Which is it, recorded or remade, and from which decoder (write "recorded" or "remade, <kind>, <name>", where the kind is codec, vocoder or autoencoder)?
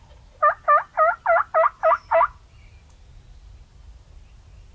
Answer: recorded